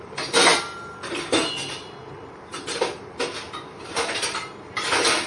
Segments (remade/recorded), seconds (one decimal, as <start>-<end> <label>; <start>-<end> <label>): 0.0-0.5 remade; 0.5-1.6 recorded; 1.6-5.3 remade

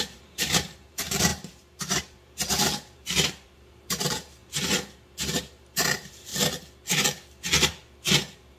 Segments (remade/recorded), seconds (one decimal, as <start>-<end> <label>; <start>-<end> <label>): 0.0-4.4 remade; 4.4-5.4 recorded; 5.4-6.3 remade; 6.3-8.1 recorded; 8.1-8.6 remade

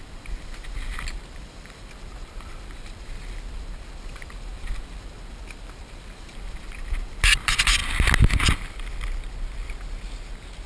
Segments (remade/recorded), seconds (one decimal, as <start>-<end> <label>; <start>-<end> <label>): 0.0-7.8 remade; 7.8-10.7 recorded

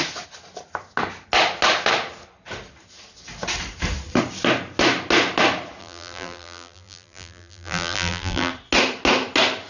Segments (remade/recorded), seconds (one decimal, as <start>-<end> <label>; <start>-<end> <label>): 0.0-5.8 recorded; 5.8-8.5 remade; 8.5-9.7 recorded

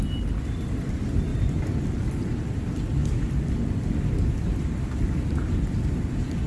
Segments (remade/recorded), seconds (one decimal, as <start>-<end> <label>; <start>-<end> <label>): 0.0-1.3 recorded; 1.3-5.2 remade; 5.2-6.5 recorded

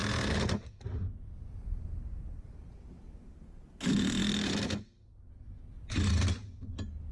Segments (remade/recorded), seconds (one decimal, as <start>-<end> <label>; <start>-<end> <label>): 0.0-7.1 recorded